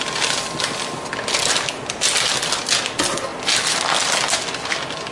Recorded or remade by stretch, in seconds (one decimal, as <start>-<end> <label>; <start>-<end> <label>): 0.0-5.1 recorded